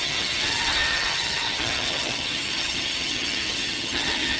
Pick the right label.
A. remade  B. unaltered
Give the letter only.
A